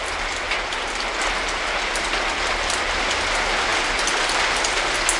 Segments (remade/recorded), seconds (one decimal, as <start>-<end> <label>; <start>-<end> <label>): 0.0-5.2 recorded